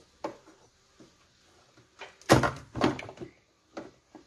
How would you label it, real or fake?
real